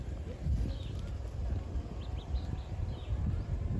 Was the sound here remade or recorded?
recorded